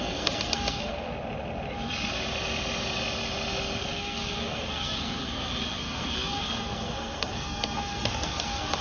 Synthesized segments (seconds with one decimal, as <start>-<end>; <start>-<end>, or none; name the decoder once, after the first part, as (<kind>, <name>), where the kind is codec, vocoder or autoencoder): 0.0-1.1 (codec, SNAC); 3.8-8.8